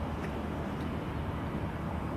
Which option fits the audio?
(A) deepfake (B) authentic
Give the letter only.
A